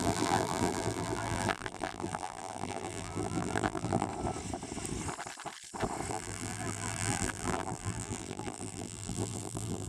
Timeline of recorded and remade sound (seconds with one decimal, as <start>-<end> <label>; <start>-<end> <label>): 0.0-4.1 remade; 4.1-6.1 recorded; 6.1-9.9 remade